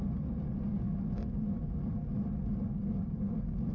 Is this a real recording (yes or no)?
yes